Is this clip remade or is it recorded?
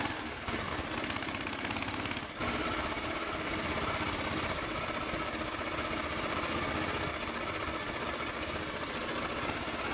recorded